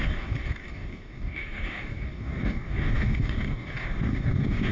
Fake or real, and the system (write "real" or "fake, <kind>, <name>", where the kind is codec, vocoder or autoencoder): fake, codec, DAC